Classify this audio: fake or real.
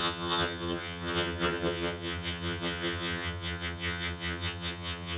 fake